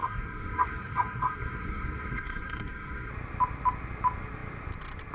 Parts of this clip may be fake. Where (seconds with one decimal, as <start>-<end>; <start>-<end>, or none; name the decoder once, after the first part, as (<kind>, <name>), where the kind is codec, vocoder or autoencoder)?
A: 0.0-3.1 (codec, SNAC)